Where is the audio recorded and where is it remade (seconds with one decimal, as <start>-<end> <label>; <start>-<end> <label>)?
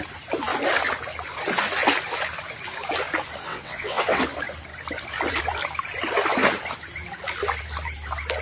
0.0-3.5 recorded; 3.5-4.2 remade; 4.2-8.4 recorded